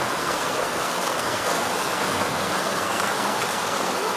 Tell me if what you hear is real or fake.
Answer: fake